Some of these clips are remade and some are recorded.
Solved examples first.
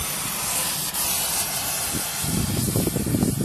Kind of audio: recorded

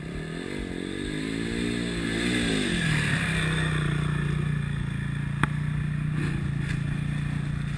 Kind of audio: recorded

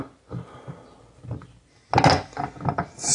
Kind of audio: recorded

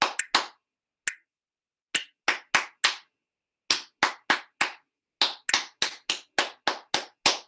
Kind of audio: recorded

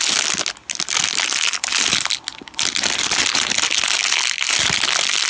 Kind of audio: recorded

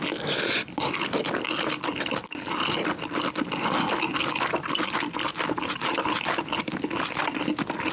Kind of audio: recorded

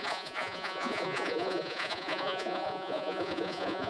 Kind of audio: remade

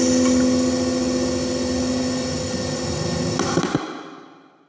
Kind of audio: recorded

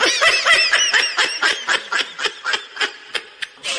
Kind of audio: recorded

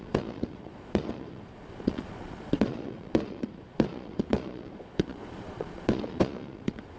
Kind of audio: remade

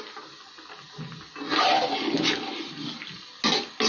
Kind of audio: recorded